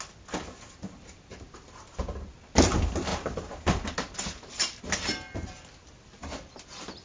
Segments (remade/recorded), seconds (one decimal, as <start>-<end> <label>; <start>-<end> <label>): 0.0-3.1 recorded; 3.1-4.8 remade; 4.8-7.0 recorded